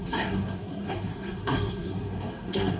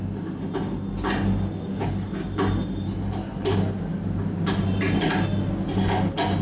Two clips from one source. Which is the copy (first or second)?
first